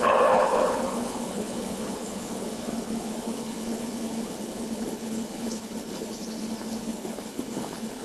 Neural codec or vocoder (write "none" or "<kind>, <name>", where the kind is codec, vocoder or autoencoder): codec, HILCodec